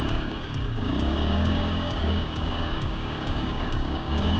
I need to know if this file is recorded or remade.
remade